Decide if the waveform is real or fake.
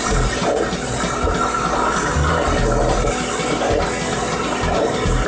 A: real